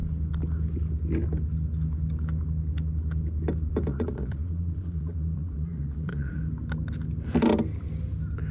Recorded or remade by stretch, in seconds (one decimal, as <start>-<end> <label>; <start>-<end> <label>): 0.0-3.9 recorded; 3.9-6.4 remade; 6.4-8.5 recorded